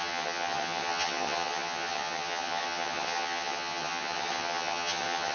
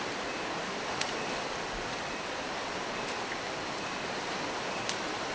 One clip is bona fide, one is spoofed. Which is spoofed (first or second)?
first